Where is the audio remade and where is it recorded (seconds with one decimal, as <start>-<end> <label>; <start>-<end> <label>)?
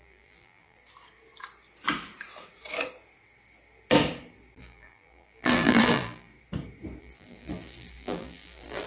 0.0-0.8 remade; 0.8-4.6 recorded; 4.6-6.3 remade; 6.3-7.0 recorded; 7.0-8.9 remade